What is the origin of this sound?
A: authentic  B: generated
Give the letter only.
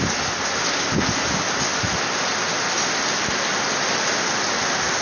A